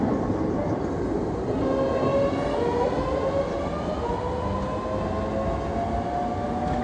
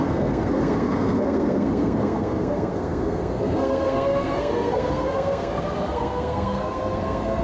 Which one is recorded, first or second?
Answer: first